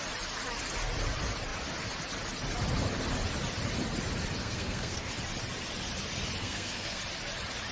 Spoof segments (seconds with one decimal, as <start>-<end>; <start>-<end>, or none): 4.4-5.1; 6.4-7.0